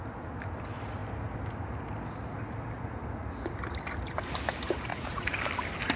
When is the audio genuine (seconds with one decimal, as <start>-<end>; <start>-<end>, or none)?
0.0-4.9; 5.4-6.0